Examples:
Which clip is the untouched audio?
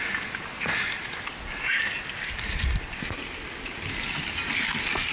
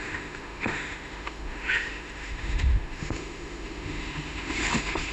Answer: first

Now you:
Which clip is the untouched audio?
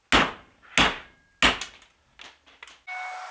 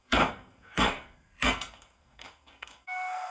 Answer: first